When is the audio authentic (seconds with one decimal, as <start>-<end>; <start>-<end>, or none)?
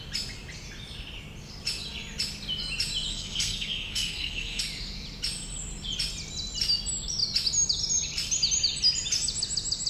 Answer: 0.0-3.1; 4.6-9.9